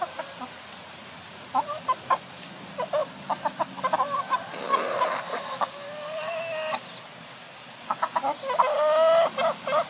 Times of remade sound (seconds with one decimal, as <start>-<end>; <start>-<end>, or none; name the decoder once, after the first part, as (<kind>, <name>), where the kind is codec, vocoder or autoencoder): none